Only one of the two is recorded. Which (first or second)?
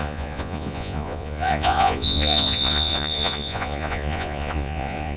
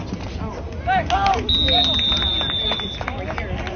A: second